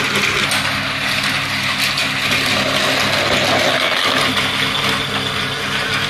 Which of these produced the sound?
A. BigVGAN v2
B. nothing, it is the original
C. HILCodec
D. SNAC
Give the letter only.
B